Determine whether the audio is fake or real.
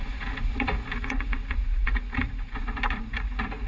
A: fake